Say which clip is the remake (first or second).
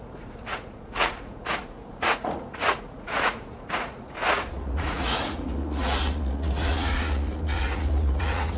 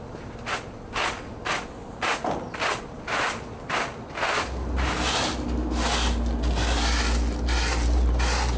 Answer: first